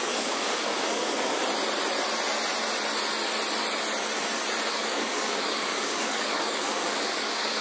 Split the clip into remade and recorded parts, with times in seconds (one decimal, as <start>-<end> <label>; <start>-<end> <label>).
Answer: 0.0-1.4 remade; 1.4-4.7 recorded; 4.7-7.6 remade